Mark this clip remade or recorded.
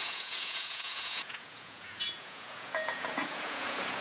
remade